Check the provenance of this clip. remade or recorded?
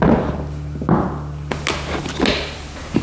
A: recorded